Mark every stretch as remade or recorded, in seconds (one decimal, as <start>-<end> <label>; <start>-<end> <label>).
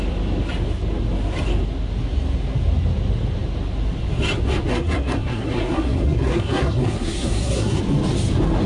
0.0-4.7 recorded; 4.7-7.8 remade; 7.8-8.7 recorded